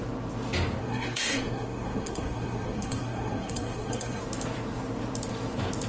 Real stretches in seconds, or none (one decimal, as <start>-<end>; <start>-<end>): 0.0-0.8; 4.2-5.9